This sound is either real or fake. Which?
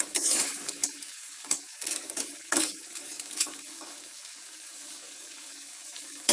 fake